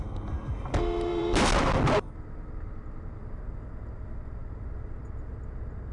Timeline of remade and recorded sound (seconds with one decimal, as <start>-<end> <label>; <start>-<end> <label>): 0.0-1.1 recorded; 1.1-3.3 remade; 3.3-4.4 recorded; 4.4-5.0 remade; 5.0-5.9 recorded